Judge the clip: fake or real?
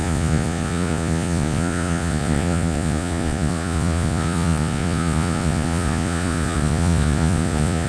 fake